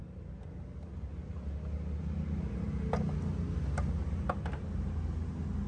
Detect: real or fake real